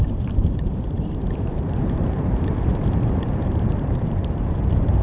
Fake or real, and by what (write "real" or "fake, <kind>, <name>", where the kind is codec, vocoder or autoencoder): fake, vocoder, BigVGAN v2